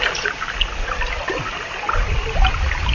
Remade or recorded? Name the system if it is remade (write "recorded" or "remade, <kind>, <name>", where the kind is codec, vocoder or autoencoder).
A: recorded